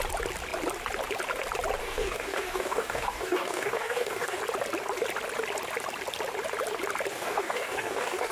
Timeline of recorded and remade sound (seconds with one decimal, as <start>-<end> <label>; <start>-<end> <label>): 0.0-1.8 recorded; 1.8-4.4 remade; 4.4-7.1 recorded; 7.1-8.3 remade

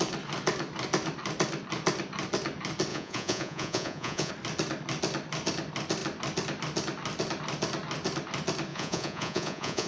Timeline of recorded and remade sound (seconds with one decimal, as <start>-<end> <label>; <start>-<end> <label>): 0.0-2.9 recorded; 2.9-4.3 remade; 4.3-8.7 recorded; 8.7-9.9 remade

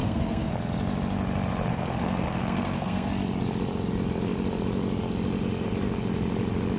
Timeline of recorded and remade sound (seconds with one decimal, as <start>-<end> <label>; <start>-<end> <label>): 0.0-0.5 remade; 0.5-1.7 recorded; 1.7-3.1 remade; 3.1-6.8 recorded

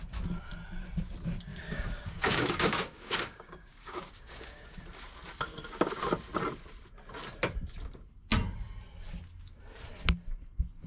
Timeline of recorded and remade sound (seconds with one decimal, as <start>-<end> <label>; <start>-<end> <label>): 0.0-1.5 recorded; 1.5-4.8 remade; 4.8-10.9 recorded

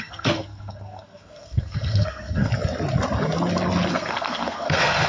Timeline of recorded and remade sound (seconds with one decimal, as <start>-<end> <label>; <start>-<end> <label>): 0.0-2.5 remade; 2.5-3.9 recorded; 3.9-5.1 remade

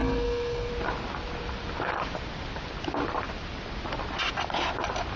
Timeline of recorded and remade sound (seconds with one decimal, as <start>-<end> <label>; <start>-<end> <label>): 0.0-0.7 remade; 0.7-5.2 recorded

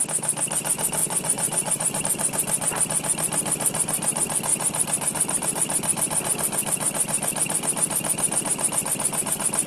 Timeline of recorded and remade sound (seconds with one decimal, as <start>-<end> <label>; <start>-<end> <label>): 0.0-1.0 recorded; 1.0-2.0 remade; 2.0-9.7 recorded

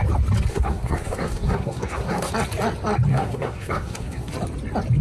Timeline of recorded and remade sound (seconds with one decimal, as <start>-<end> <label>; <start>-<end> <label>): 0.0-0.5 recorded; 0.5-2.3 remade; 2.3-3.1 recorded; 3.1-4.3 remade; 4.3-5.0 recorded